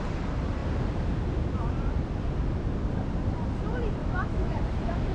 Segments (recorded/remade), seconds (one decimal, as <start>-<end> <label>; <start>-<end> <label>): 0.0-4.0 recorded; 4.0-4.6 remade; 4.6-5.1 recorded